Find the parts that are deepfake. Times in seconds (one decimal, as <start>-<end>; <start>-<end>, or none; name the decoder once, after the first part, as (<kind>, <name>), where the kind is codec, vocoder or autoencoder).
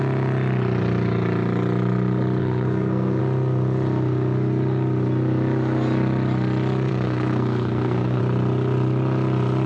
2.4-3.2 (codec, SNAC); 6.9-8.2